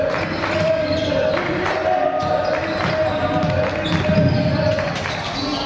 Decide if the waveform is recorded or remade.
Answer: recorded